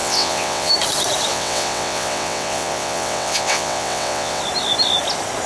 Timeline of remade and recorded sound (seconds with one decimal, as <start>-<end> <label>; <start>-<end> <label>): 0.0-0.7 remade; 0.7-1.3 recorded; 1.3-4.4 remade; 4.4-5.5 recorded